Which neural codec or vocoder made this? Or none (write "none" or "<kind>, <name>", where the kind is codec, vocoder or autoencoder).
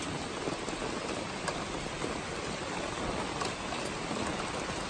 none